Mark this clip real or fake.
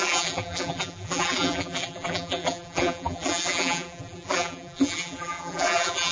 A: fake